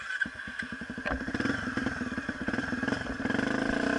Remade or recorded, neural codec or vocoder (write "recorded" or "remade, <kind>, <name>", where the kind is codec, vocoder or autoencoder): remade, vocoder, BigVGAN v2